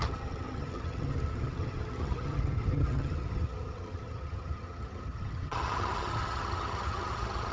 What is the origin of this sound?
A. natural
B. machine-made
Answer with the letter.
B